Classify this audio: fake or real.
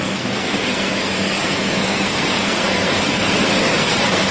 fake